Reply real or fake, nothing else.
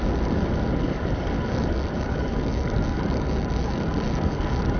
fake